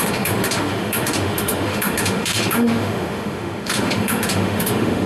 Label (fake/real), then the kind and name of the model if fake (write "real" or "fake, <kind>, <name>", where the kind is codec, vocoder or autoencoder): fake, autoencoder, DAC-VAE